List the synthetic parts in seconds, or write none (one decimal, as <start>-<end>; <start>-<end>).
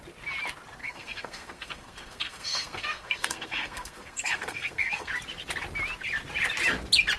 0.8-5.1